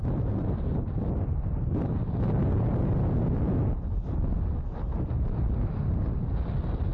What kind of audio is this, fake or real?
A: real